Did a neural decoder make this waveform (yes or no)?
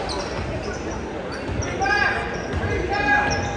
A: no